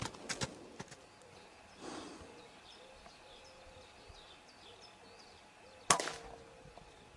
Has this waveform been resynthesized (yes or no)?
no